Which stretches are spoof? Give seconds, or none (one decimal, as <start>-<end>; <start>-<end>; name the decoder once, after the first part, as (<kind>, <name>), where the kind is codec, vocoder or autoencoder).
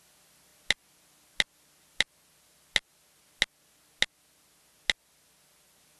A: none